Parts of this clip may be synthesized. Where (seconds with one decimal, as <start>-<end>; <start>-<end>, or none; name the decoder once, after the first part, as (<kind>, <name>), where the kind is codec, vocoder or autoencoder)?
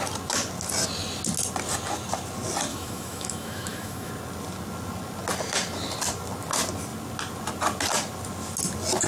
2.7-4.1 (autoencoder, DAC-VAE)